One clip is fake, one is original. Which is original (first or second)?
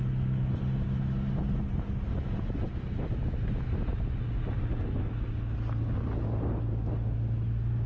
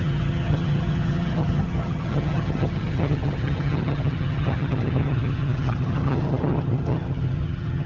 first